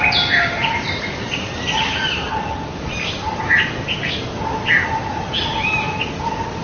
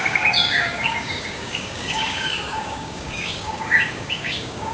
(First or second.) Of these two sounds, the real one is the first